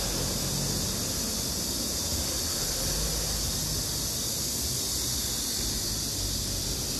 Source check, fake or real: real